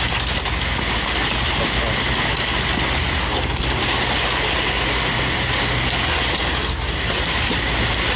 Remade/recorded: recorded